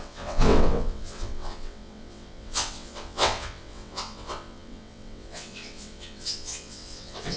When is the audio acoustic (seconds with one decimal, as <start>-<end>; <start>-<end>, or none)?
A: none